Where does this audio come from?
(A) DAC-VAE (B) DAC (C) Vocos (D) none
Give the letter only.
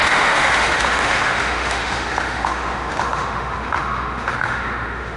A